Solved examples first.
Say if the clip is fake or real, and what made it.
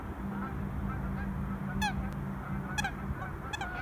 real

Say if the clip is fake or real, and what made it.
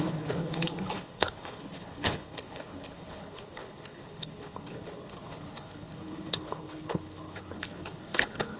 fake, codec, HILCodec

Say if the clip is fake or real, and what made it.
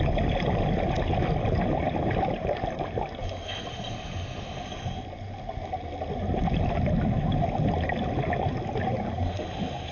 real